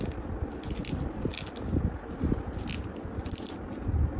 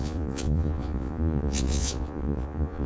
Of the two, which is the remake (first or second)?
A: second